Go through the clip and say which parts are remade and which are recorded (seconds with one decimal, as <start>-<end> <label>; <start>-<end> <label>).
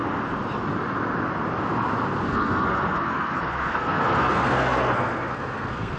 0.0-2.3 recorded; 2.3-6.0 remade